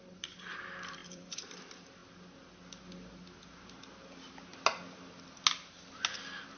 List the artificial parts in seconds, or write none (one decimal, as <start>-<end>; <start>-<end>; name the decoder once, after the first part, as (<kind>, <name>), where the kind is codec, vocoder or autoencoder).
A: 1.0-1.6 (vocoder, BigVGAN v2)